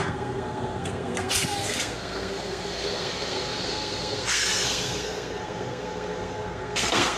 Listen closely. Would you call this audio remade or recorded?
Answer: remade